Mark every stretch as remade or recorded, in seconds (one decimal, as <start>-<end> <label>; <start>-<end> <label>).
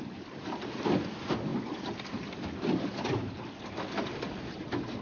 0.0-5.0 recorded